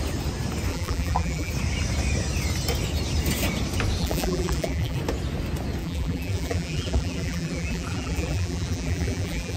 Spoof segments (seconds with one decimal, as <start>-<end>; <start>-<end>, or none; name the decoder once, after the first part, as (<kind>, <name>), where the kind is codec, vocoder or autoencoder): 0.7-1.5 (vocoder, BigVGAN v2); 4.0-5.0; 5.8-9.6